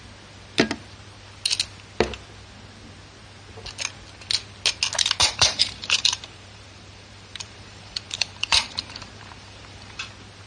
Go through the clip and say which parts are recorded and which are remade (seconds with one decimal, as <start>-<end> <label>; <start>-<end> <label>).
0.0-5.2 recorded; 5.2-10.1 remade; 10.1-10.5 recorded